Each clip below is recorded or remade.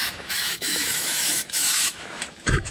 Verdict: remade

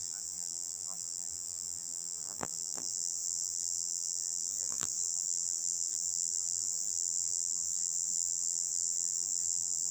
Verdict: remade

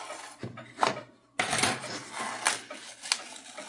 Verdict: recorded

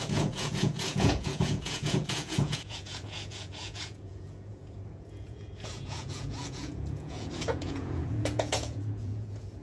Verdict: remade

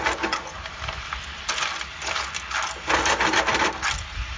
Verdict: recorded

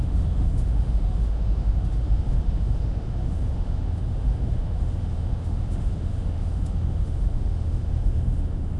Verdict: remade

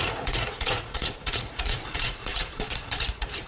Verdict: remade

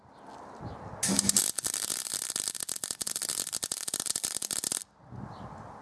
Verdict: recorded